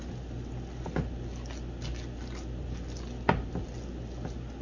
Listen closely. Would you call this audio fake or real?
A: real